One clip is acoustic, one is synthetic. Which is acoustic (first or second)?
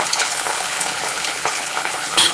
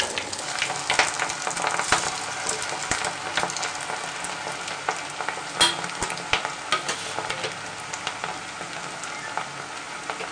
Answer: second